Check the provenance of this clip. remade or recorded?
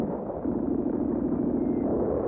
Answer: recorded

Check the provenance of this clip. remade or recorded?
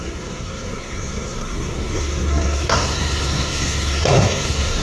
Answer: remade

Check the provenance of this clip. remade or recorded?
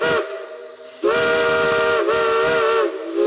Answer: recorded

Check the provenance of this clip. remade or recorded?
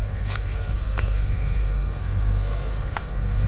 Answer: remade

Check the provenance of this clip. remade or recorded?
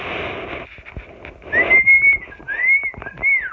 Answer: recorded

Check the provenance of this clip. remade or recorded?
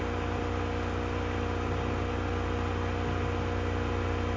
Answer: recorded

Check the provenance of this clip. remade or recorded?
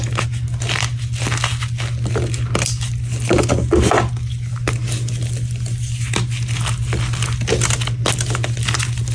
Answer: recorded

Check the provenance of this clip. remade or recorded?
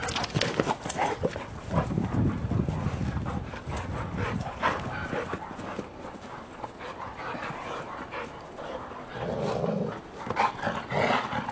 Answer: recorded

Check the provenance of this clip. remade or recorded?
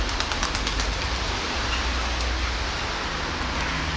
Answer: recorded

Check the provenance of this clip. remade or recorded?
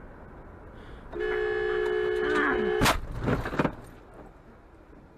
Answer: recorded